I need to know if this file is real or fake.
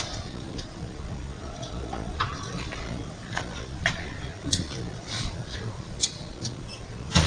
fake